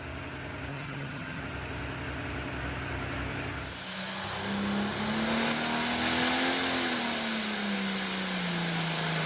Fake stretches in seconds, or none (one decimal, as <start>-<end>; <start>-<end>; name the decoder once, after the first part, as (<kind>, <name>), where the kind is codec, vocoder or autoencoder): 0.7-1.4 (vocoder, HiFi-GAN)